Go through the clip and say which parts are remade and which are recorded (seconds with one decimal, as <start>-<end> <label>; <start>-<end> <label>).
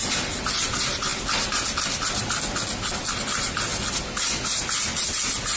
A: 0.0-5.6 recorded